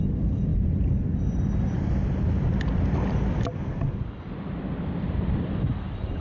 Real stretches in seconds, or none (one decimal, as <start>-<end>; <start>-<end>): 0.0-6.2